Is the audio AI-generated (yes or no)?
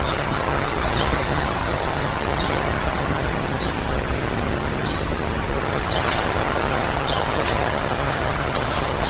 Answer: yes